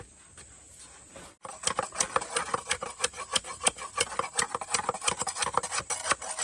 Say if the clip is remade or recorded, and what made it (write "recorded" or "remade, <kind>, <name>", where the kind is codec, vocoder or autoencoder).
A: recorded